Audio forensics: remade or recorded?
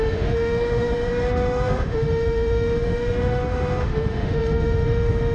remade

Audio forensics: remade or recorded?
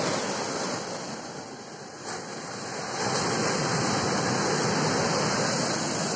recorded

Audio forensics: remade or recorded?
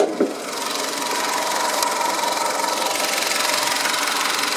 recorded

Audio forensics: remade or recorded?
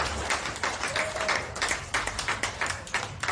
remade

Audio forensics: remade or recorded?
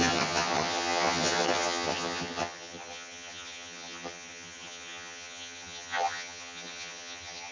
remade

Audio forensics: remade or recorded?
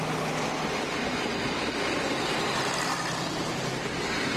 recorded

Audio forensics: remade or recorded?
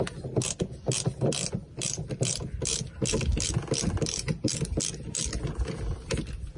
recorded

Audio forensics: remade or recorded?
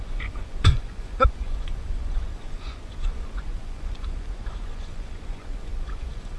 remade